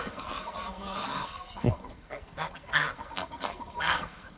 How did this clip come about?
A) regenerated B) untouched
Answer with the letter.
A